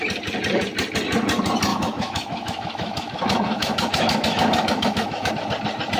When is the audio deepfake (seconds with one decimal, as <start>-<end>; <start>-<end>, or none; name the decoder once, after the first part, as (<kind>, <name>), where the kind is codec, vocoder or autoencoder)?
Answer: 1.7-5.3 (autoencoder, DAC-VAE)